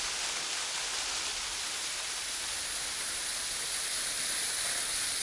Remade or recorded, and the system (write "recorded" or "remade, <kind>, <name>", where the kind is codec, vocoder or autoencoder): recorded